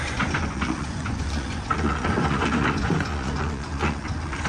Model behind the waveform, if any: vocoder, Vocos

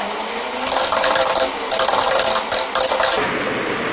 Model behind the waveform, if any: none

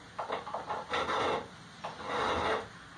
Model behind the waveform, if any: none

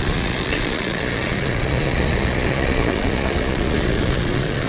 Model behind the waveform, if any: vocoder, Vocos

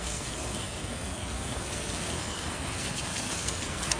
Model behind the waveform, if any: codec, SNAC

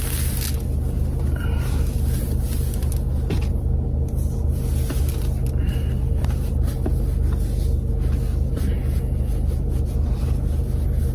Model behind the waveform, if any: none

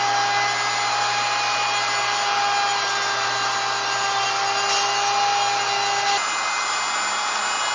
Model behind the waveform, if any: none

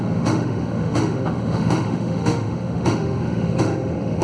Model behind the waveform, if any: autoencoder, DAC-VAE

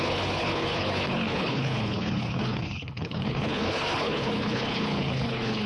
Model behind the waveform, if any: codec, HILCodec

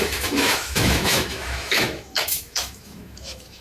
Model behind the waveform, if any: autoencoder, DAC-VAE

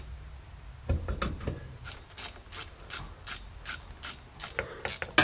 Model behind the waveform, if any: none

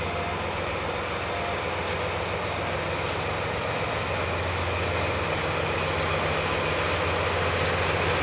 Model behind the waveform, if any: none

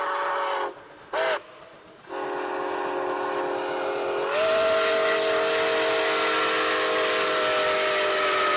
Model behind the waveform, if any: none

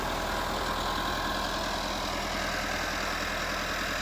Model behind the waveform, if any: none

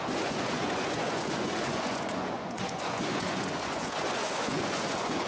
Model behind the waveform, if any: vocoder, Vocos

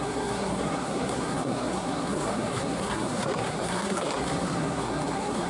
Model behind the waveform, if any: codec, SNAC